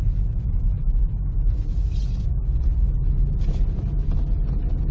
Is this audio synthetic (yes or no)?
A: no